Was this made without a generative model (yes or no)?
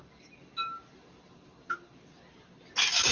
yes